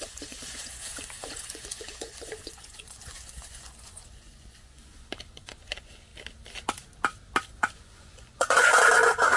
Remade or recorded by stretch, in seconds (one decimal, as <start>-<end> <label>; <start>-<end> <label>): 0.0-6.1 remade; 6.1-7.5 recorded; 7.5-9.4 remade